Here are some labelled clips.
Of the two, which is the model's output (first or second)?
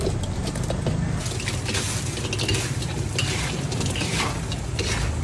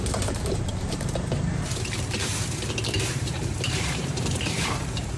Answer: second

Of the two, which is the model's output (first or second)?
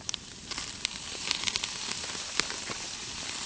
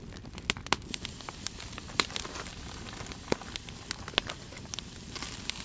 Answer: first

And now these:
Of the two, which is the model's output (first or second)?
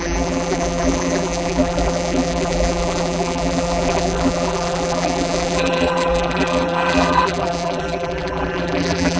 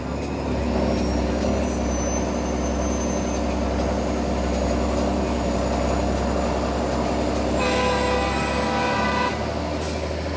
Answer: first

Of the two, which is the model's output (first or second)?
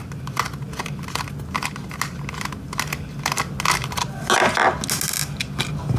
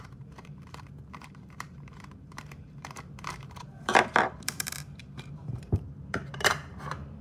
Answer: second